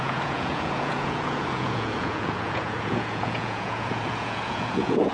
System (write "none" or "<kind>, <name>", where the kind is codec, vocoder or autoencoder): vocoder, Vocos